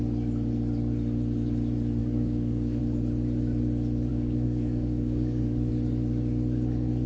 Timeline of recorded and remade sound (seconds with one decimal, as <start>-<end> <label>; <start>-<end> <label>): 0.0-2.0 recorded; 2.0-2.8 remade; 2.8-4.1 recorded; 4.1-5.7 remade; 5.7-7.1 recorded